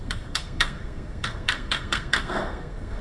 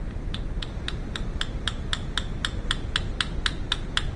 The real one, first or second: second